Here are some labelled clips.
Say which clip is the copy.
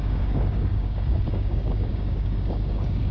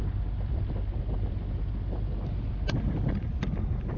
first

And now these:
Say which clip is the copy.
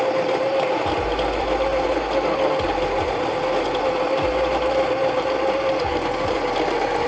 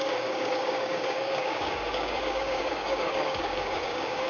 second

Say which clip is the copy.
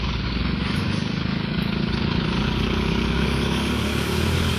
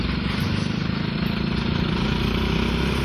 first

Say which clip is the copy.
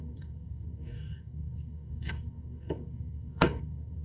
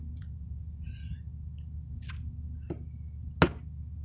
first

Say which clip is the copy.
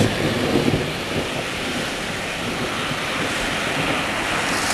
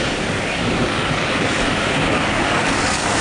second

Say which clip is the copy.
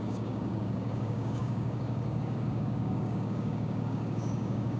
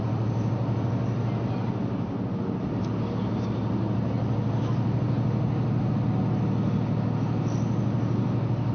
first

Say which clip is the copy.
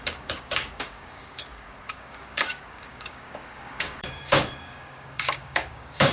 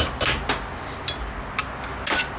first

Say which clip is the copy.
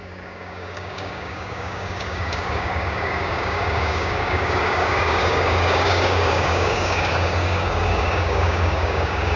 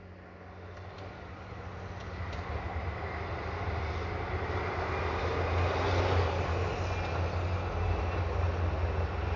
first